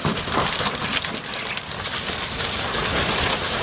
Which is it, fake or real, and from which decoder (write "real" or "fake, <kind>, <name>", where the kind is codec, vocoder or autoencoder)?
real